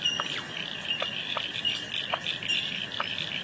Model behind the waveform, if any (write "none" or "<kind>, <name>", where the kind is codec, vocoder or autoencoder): none